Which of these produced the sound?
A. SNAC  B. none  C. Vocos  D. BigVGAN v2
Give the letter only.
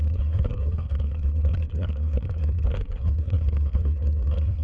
A